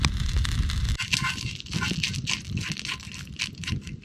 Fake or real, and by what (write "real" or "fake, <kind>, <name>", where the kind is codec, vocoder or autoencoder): real